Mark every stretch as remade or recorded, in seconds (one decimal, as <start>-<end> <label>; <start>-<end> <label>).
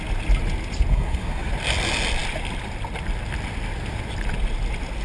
0.0-0.9 recorded; 0.9-1.5 remade; 1.5-5.0 recorded